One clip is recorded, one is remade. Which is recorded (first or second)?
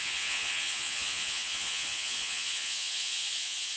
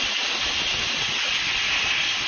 second